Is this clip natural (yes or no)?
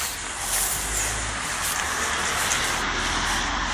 yes